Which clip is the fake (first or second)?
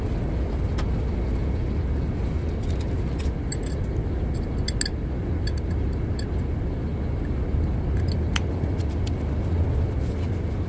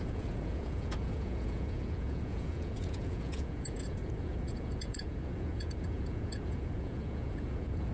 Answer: second